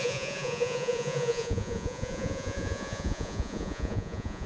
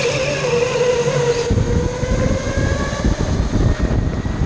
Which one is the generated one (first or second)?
first